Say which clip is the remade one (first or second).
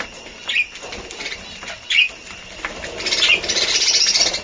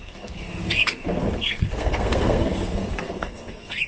second